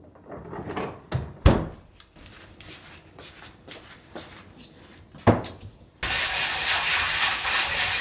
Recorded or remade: recorded